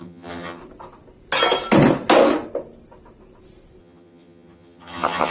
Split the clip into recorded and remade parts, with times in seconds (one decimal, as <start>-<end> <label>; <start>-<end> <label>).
0.0-0.6 remade; 0.6-3.8 recorded; 3.8-5.3 remade